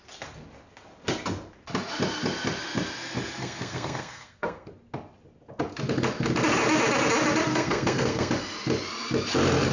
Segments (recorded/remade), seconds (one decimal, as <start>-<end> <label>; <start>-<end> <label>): 0.0-3.4 recorded; 3.4-4.7 remade; 4.7-7.5 recorded; 7.5-8.3 remade; 8.3-9.7 recorded